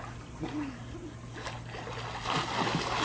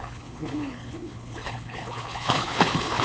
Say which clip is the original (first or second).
first